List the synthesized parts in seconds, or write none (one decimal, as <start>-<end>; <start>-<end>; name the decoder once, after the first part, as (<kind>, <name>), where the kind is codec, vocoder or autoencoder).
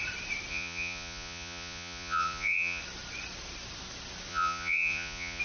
0.5-2.8 (vocoder, Vocos); 4.3-5.4